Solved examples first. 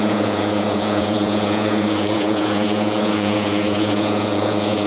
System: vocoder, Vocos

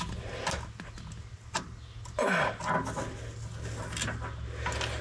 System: none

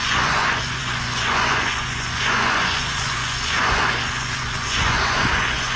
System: vocoder, Vocos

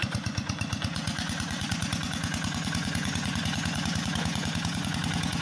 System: vocoder, Vocos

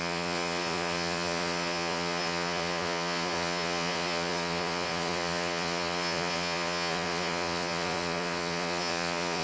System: vocoder, Vocos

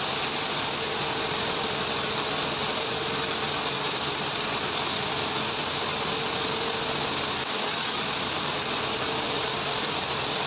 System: none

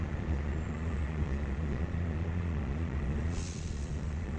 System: vocoder, Vocos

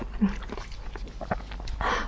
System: none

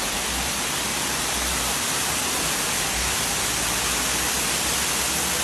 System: none